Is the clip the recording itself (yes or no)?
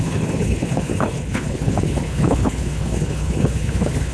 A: no